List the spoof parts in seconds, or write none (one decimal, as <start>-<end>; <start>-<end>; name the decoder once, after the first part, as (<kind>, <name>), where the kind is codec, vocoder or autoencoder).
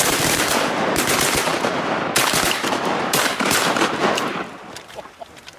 0.0-1.5 (vocoder, BigVGAN v2); 2.2-4.0